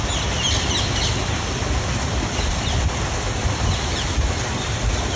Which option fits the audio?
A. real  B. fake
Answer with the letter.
A